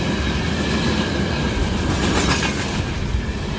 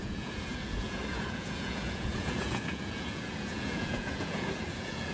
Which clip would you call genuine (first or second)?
first